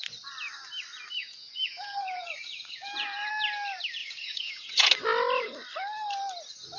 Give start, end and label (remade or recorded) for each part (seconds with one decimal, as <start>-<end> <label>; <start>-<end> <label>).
0.0-1.2 recorded; 1.2-3.3 remade; 3.3-4.0 recorded; 4.0-4.9 remade; 4.9-6.8 recorded